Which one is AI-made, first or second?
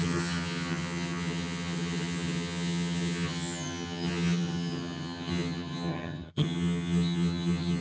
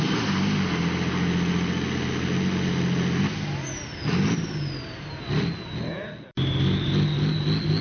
first